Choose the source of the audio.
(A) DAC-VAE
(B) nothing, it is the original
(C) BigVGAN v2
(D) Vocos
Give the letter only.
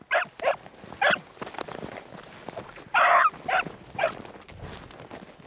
B